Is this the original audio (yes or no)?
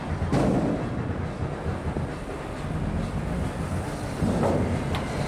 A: yes